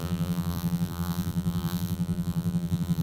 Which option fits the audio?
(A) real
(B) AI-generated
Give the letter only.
B